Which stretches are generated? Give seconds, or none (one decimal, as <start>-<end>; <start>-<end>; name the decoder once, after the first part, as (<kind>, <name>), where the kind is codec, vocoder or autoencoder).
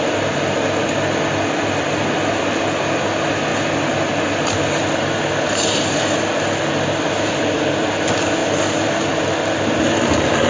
8.4-9.1 (vocoder, BigVGAN v2)